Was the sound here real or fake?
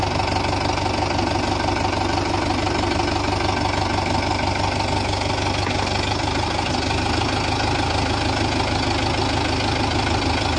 real